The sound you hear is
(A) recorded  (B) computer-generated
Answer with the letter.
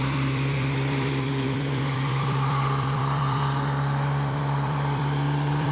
B